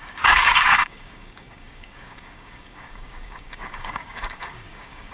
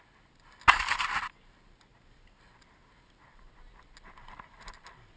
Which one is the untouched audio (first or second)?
second